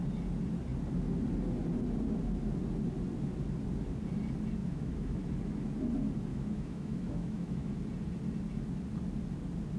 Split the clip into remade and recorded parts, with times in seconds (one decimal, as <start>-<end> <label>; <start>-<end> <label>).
0.0-4.6 recorded; 4.6-5.2 remade; 5.2-6.3 recorded; 6.3-7.7 remade; 7.7-9.8 recorded